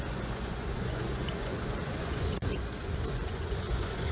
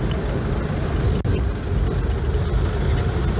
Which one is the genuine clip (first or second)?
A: second